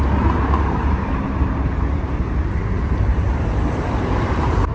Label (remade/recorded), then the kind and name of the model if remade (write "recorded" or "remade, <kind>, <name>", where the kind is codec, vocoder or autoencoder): remade, vocoder, BigVGAN v2